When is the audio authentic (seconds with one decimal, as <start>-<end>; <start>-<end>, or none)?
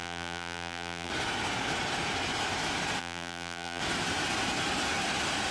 1.1-3.0; 3.8-5.5